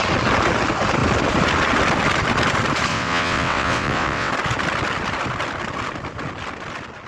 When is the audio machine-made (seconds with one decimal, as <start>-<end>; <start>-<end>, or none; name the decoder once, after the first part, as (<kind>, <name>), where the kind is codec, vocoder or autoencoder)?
2.9-4.3 (vocoder, WaveNeXt)